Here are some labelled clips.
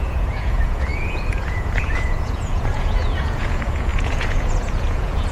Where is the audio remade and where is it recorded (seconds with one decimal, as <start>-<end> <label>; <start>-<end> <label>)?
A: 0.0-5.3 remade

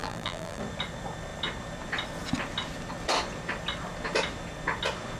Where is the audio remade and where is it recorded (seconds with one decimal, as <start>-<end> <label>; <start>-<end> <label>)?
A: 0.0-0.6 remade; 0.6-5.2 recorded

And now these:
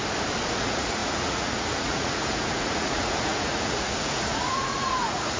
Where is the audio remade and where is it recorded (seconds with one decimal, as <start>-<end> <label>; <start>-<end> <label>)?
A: 0.0-0.5 recorded; 0.5-5.4 remade

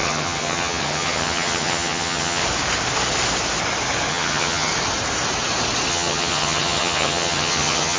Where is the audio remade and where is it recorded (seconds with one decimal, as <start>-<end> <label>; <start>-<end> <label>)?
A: 0.0-2.4 remade; 2.4-4.1 recorded; 4.1-4.7 remade; 4.7-5.9 recorded; 5.9-8.0 remade